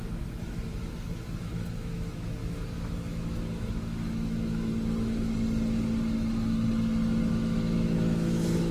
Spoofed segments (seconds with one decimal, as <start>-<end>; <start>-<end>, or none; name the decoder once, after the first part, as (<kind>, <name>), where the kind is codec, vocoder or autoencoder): 0.0-4.7 (autoencoder, DAC-VAE); 7.2-8.7